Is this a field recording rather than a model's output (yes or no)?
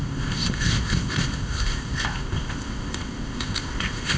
no